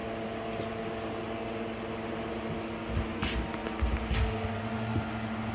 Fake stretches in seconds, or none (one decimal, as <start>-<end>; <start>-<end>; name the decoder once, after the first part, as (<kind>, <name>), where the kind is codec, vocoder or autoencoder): none